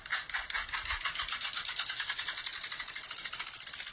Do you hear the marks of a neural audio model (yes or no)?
no